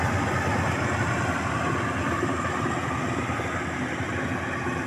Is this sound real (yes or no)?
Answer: yes